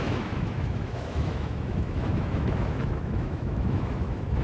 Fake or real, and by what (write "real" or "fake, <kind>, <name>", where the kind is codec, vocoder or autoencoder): fake, autoencoder, DAC-VAE